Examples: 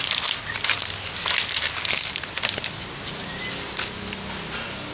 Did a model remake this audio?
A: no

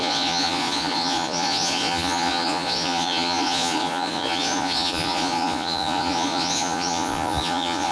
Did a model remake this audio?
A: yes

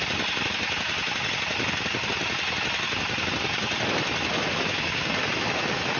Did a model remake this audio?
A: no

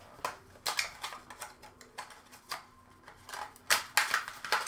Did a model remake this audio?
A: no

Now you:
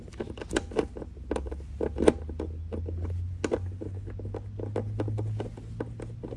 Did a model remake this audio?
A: no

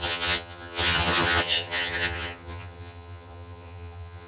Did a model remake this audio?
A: yes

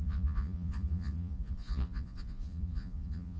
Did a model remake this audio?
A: yes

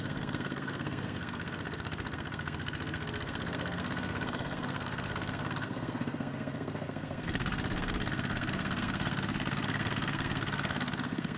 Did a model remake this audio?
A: yes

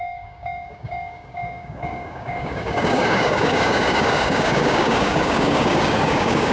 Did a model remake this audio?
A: yes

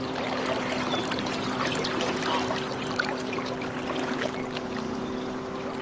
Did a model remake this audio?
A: no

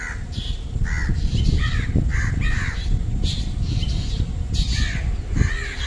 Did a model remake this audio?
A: no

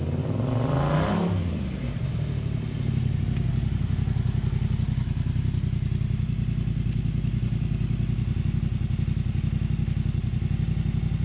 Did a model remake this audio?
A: no